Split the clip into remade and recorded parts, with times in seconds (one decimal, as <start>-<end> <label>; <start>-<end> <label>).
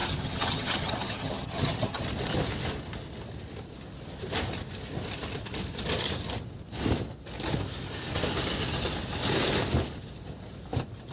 0.0-2.0 remade; 2.0-11.1 recorded